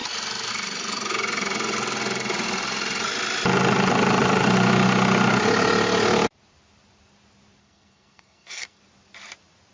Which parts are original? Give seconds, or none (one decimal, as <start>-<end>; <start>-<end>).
0.0-7.6; 8.8-9.7